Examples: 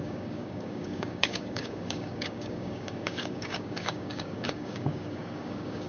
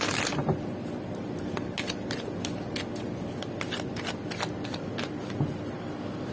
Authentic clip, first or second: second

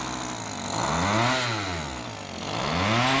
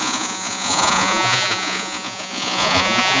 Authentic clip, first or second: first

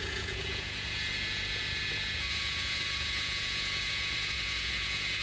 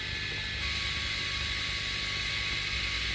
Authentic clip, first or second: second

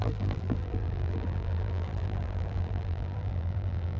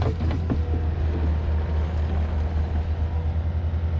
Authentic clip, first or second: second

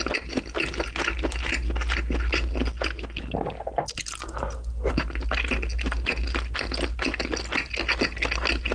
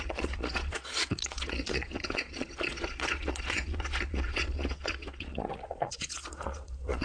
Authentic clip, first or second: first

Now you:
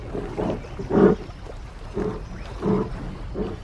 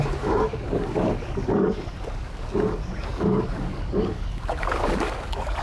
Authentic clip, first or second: first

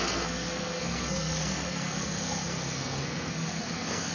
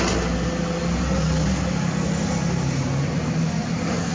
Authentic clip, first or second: second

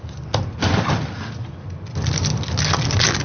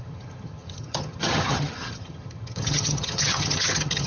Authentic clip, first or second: first